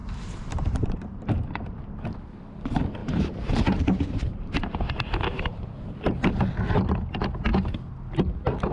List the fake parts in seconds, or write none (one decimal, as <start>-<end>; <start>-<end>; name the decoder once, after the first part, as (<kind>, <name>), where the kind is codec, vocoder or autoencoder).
0.0-1.9 (vocoder, BigVGAN v2); 3.0-4.9